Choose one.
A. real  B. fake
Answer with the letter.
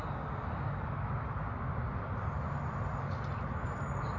A